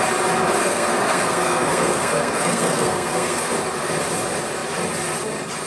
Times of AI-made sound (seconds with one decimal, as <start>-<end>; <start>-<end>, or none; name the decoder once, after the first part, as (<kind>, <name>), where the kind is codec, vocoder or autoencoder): 0.6-3.5 (codec, SNAC)